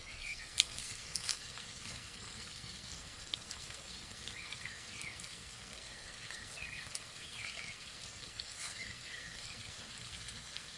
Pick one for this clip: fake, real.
fake